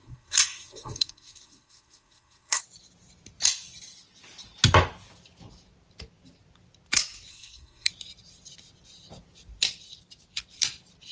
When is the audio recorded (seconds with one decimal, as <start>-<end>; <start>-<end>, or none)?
2.6-7.3; 7.9-11.1